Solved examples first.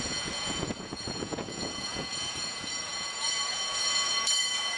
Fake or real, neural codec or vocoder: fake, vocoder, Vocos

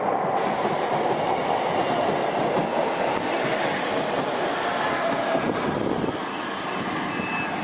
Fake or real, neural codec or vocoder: real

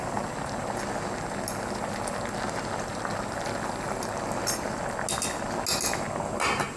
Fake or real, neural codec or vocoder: real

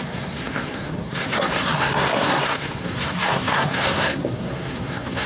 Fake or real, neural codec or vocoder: fake, codec, SNAC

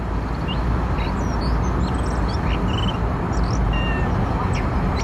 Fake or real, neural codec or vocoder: real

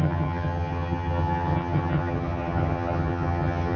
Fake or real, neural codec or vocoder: fake, vocoder, HiFi-GAN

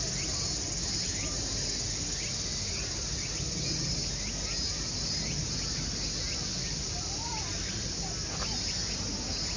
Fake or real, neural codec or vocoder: real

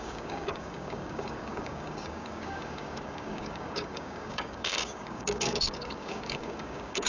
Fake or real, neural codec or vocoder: fake, codec, DAC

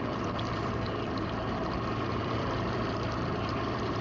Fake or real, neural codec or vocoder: fake, vocoder, BigVGAN v2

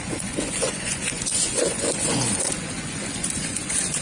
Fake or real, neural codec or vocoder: fake, vocoder, Vocos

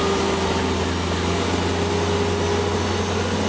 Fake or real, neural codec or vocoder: real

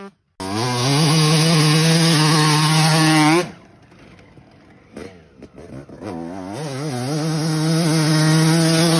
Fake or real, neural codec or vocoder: real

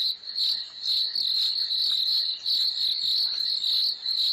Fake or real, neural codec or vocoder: real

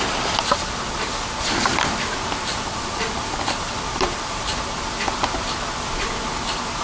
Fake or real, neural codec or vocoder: real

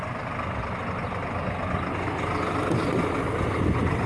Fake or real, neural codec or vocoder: real